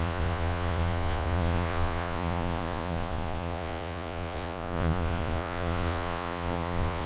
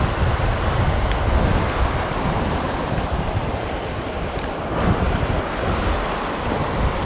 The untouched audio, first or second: second